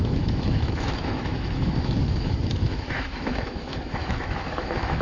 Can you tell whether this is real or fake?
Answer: fake